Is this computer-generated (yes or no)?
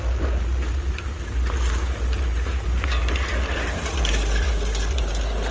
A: no